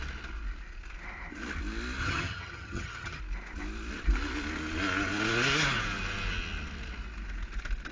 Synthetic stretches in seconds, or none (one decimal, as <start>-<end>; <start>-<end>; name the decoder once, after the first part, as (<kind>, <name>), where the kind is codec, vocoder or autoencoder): 2.0-3.2 (vocoder, HiFi-GAN)

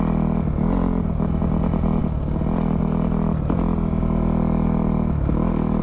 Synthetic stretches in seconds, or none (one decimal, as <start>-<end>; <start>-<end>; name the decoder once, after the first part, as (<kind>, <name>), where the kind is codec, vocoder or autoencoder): none

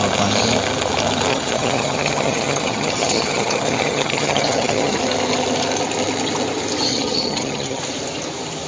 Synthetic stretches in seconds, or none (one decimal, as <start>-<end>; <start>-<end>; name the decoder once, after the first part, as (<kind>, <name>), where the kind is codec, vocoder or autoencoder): 1.3-5.0 (vocoder, HiFi-GAN); 6.9-7.8

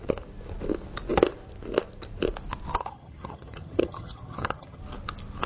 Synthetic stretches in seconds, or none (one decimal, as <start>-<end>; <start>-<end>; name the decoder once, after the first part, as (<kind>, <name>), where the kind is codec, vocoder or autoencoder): 2.7-4.8 (vocoder, HiFi-GAN)

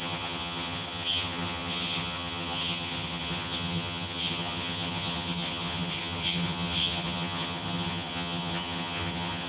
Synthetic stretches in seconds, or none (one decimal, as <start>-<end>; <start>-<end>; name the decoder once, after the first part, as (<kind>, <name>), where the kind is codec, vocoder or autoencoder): 0.0-9.5 (vocoder, HiFi-GAN)

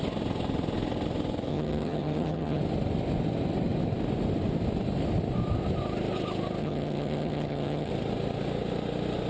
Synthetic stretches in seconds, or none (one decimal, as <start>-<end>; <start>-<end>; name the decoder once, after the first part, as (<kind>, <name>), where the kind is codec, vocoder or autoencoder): 1.5-2.6 (vocoder, HiFi-GAN); 6.6-7.9

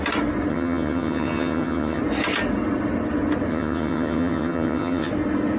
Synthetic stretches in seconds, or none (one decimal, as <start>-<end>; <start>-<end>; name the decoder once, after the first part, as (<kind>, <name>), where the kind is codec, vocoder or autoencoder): 0.5-2.0 (vocoder, HiFi-GAN); 3.5-5.1